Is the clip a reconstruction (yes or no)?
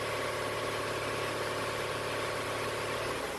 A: no